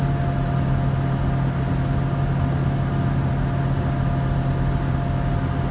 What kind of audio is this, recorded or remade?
recorded